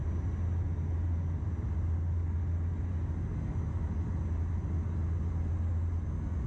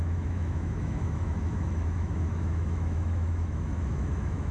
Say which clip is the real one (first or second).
first